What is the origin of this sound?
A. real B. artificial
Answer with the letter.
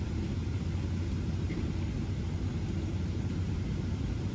A